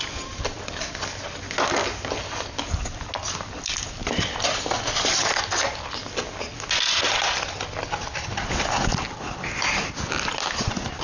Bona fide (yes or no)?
yes